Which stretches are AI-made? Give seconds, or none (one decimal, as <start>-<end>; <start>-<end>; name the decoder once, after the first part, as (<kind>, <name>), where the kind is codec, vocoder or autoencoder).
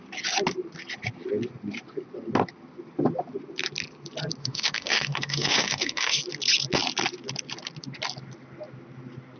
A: 4.4-6.2 (autoencoder, DAC-VAE)